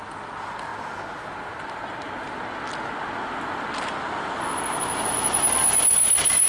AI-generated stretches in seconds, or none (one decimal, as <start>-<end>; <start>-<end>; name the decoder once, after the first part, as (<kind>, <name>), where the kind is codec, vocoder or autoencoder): none